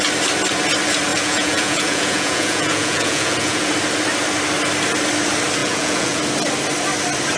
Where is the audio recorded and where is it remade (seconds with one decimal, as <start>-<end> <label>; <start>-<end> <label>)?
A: 0.0-1.1 recorded; 1.1-3.7 remade; 3.7-5.6 recorded; 5.6-6.2 remade; 6.2-7.4 recorded